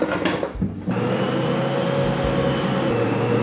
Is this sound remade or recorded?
recorded